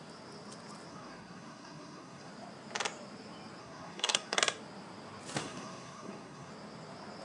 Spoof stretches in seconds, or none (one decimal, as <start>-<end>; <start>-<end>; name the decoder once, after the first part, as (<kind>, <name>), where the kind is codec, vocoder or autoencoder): 0.9-2.3 (codec, SNAC); 3.6-4.4; 5.4-6.5